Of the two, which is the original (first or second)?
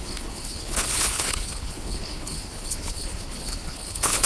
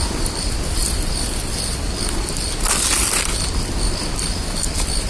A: second